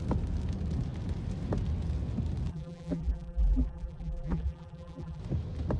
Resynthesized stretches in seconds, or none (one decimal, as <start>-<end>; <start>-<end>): 2.5-5.2